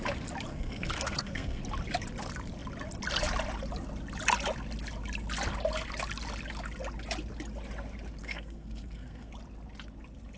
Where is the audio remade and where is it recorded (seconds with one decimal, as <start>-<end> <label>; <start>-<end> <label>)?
0.0-0.5 recorded; 0.5-1.6 remade; 1.6-8.2 recorded; 8.2-9.3 remade; 9.3-10.4 recorded